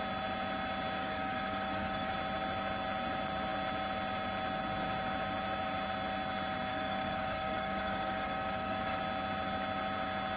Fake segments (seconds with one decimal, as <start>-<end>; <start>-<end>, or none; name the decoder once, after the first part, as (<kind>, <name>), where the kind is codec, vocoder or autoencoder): 1.0-2.1 (codec, DAC); 6.7-9.0